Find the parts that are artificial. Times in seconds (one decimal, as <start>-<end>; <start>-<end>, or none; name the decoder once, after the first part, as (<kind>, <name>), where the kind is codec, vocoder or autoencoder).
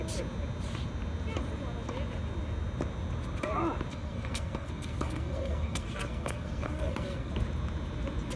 3.9-7.3 (codec, SNAC)